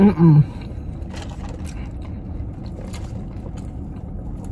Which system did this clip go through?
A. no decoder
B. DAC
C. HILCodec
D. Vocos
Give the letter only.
A